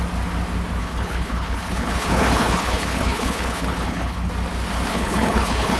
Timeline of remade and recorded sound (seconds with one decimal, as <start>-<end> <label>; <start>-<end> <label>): 0.0-0.8 recorded; 0.8-4.3 remade; 4.3-4.9 recorded; 4.9-5.8 remade